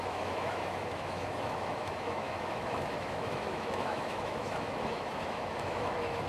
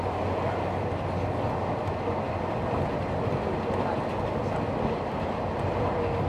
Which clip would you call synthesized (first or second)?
first